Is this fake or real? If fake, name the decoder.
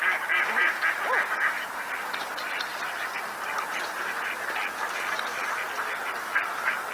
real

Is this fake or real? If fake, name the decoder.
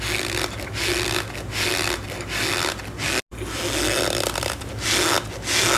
real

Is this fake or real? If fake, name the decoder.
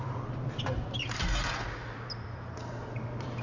real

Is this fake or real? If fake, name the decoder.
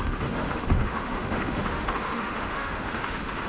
fake, autoencoder, DAC-VAE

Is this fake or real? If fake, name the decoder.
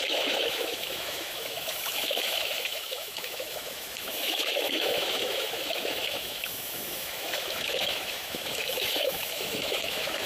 fake, autoencoder, DAC-VAE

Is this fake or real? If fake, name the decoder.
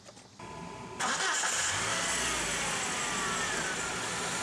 real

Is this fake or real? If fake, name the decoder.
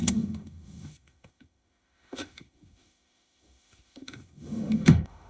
fake, autoencoder, DAC-VAE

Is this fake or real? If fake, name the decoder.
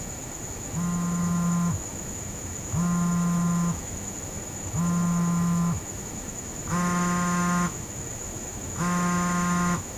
fake, autoencoder, DAC-VAE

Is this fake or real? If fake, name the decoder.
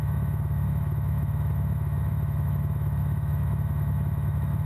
fake, autoencoder, DAC-VAE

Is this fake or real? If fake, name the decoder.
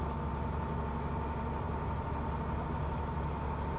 real